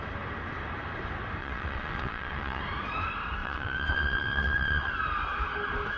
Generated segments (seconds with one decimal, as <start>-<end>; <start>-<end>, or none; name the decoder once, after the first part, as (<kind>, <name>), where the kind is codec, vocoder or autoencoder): 1.4-2.6 (vocoder, WaveNeXt); 3.4-4.9